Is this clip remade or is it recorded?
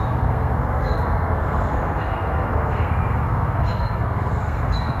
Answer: remade